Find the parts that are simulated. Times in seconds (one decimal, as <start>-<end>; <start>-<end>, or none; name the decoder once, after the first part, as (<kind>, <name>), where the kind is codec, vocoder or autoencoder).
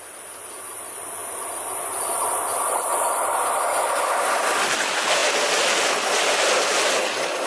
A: none